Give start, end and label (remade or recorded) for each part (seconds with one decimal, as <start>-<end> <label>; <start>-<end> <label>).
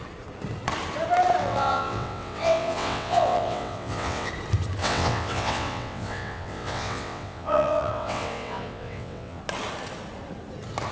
0.0-1.4 recorded; 1.4-4.3 remade; 4.3-4.8 recorded; 4.8-9.4 remade; 9.4-10.9 recorded